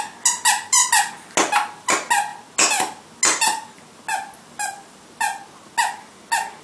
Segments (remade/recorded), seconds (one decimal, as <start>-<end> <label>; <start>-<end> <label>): 0.0-6.6 recorded